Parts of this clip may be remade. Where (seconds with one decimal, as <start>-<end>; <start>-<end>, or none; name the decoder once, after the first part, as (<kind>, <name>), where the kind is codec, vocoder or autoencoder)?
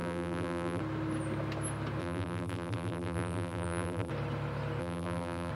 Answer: 0.0-0.8 (vocoder, BigVGAN v2); 2.0-4.1; 4.8-5.5